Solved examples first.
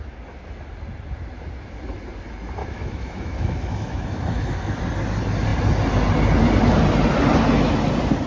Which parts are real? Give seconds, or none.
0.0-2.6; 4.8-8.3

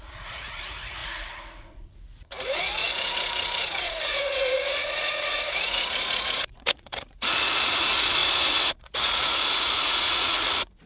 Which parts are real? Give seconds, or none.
none

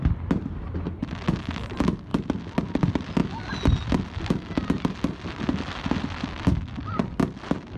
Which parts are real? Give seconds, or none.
0.0-7.8